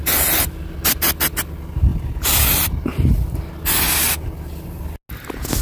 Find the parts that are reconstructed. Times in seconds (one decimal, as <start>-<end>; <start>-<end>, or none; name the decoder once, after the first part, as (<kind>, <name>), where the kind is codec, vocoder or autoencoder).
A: none